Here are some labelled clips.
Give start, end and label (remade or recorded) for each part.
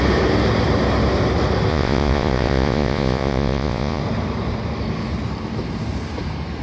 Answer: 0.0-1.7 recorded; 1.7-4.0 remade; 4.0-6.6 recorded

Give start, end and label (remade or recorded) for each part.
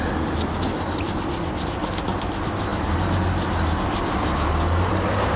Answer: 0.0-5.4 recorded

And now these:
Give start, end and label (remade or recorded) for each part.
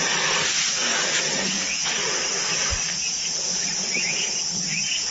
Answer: 0.0-0.9 recorded; 0.9-2.2 remade; 2.2-3.0 recorded; 3.0-5.1 remade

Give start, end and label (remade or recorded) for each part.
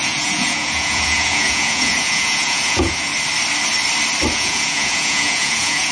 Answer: 0.0-3.1 remade; 3.1-4.3 recorded; 4.3-5.9 remade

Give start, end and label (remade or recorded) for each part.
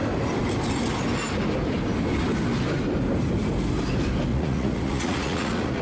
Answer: 0.0-4.3 recorded; 4.3-5.8 remade